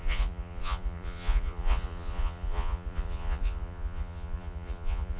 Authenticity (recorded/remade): remade